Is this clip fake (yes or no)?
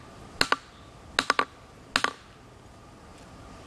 no